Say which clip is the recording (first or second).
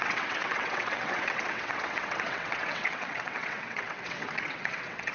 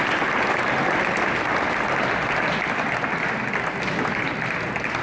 second